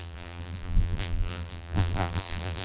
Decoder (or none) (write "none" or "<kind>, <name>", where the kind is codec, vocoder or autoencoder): vocoder, BigVGAN v2